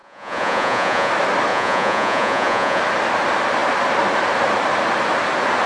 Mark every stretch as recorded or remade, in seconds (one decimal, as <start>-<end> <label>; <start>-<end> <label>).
0.0-1.1 remade; 1.1-1.5 recorded; 1.5-2.8 remade; 2.8-5.7 recorded